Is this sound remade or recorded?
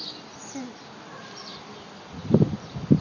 recorded